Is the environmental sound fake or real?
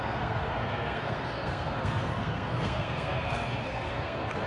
fake